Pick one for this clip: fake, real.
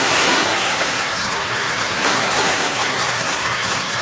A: fake